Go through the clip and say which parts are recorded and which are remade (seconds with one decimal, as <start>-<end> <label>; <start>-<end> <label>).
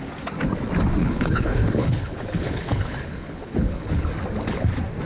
0.0-1.0 recorded; 1.0-4.1 remade; 4.1-5.1 recorded